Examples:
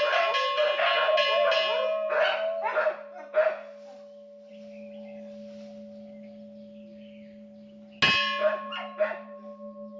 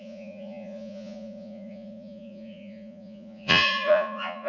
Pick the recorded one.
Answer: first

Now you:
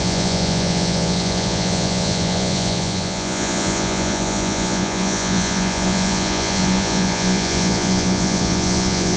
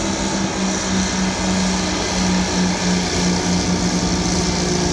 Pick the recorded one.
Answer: second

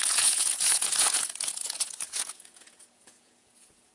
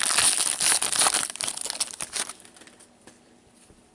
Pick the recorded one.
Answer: second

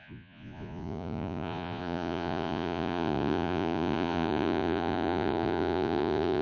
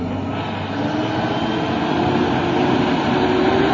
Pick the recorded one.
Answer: second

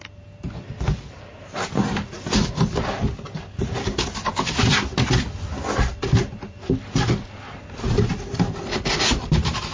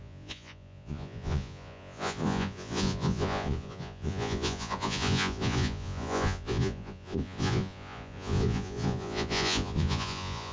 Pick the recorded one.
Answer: first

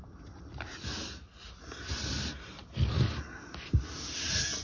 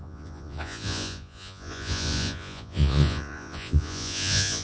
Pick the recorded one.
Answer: first